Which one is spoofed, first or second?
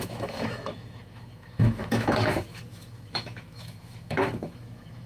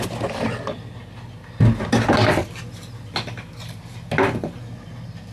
first